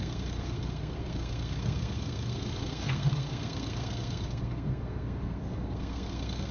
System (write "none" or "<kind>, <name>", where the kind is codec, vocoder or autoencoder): codec, SNAC